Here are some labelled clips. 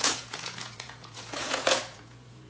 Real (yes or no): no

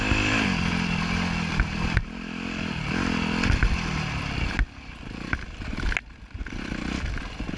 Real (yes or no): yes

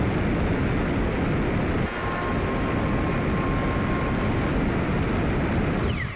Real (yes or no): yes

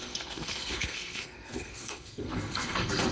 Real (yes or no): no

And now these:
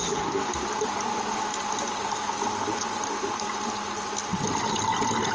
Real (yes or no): yes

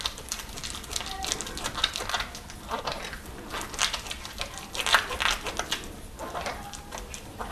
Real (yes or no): yes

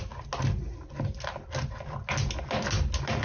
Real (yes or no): yes